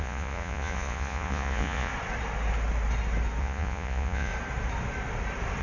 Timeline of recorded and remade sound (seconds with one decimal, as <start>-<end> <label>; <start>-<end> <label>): 0.0-1.9 remade; 1.9-3.4 recorded; 3.4-4.3 remade; 4.3-5.6 recorded